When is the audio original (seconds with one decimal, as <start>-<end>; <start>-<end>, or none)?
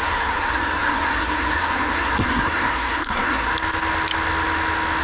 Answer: 3.5-5.0